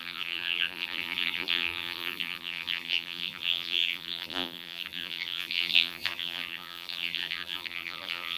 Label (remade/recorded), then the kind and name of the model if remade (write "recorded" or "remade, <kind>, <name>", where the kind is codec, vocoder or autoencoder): remade, vocoder, BigVGAN v2